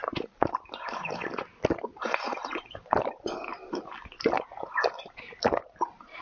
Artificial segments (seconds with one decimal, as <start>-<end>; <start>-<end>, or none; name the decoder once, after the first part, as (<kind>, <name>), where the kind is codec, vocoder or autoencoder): none